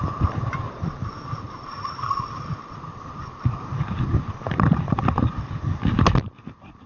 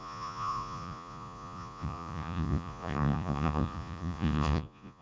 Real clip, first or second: first